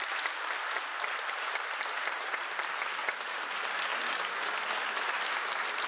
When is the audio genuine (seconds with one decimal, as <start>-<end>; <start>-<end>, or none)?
0.0-0.9; 2.8-3.9; 4.6-5.9